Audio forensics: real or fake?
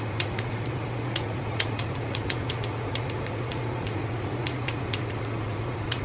fake